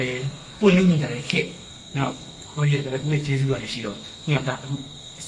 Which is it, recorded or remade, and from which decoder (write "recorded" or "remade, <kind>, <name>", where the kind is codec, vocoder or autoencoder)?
remade, codec, SNAC